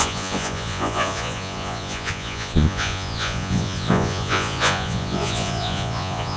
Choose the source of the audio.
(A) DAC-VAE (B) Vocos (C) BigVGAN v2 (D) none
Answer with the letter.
B